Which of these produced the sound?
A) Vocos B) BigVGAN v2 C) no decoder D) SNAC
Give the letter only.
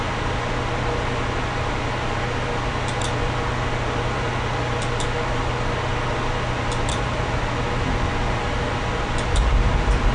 C